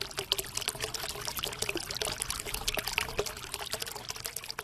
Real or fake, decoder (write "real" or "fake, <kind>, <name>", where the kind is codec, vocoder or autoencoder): real